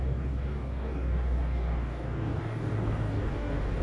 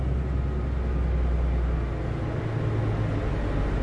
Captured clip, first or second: second